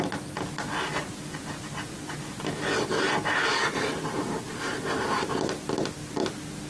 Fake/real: real